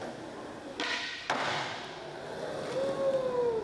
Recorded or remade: recorded